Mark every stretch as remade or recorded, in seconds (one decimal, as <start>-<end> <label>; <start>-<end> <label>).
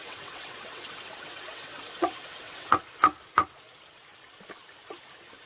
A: 0.0-2.8 remade; 2.8-5.5 recorded